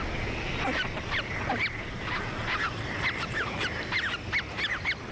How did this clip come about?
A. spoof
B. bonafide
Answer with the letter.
B